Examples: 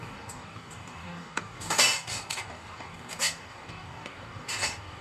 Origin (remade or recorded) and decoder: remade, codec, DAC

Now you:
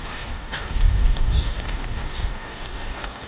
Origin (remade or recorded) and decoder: remade, codec, DAC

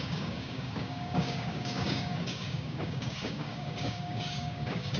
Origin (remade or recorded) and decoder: remade, codec, DAC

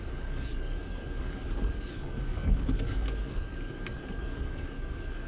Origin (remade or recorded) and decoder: remade, codec, DAC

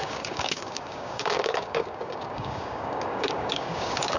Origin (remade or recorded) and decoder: remade, codec, DAC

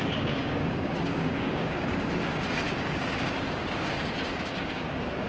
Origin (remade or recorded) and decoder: remade, codec, DAC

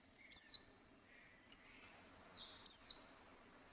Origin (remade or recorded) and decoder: recorded